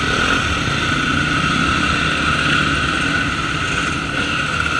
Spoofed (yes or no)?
no